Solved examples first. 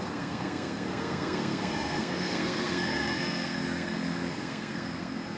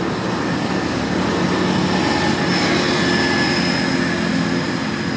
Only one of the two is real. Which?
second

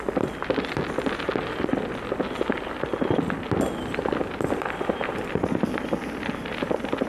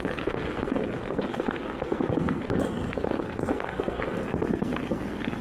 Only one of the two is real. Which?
first